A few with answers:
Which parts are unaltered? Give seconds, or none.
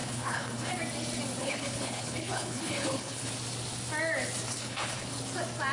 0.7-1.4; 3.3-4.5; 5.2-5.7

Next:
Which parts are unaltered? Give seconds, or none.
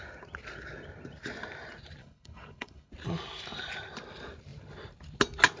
0.0-2.0; 2.9-5.6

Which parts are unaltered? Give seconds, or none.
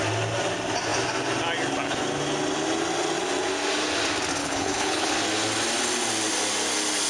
0.0-4.4; 5.1-7.1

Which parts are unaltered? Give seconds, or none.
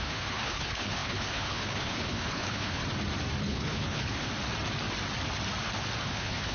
2.8-3.4; 4.3-6.0